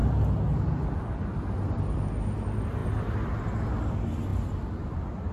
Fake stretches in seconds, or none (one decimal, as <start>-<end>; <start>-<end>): none